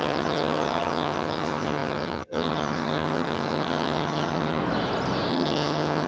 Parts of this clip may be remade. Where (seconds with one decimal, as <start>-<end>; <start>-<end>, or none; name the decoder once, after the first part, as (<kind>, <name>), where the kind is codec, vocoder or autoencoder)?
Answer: 0.0-4.6 (vocoder, HiFi-GAN); 5.3-6.1